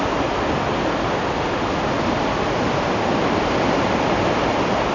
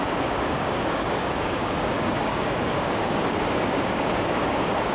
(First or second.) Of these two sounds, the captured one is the first